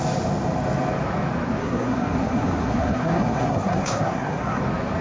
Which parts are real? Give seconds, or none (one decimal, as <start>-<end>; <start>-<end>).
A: 0.0-1.6; 4.6-5.0